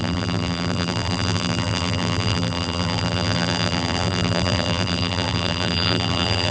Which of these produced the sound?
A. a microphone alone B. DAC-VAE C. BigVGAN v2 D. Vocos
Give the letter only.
C